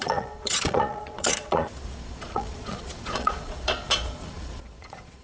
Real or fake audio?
fake